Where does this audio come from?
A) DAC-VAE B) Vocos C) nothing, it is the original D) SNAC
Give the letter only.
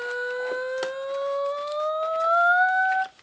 C